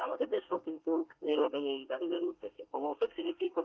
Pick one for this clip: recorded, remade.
remade